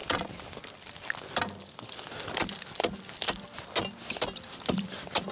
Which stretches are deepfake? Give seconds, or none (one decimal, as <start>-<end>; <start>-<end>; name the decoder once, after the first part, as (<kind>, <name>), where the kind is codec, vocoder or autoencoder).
0.0-1.1 (vocoder, BigVGAN v2)